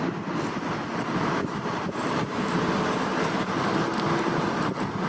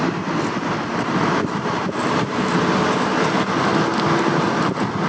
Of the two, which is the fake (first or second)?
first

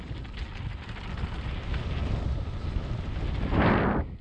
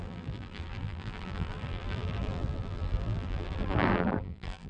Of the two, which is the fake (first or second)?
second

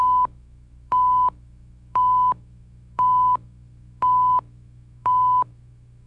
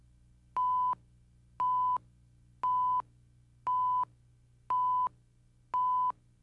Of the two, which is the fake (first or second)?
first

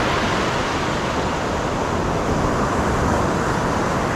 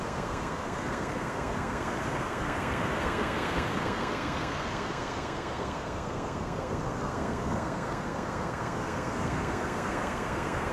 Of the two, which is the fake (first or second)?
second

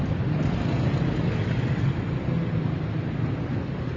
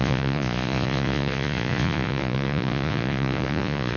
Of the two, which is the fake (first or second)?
second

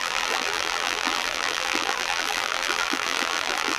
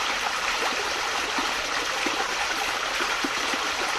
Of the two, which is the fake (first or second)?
first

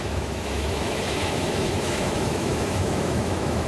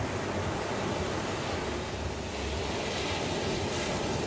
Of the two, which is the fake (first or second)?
first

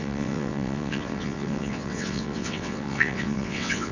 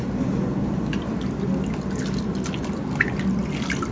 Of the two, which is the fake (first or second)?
first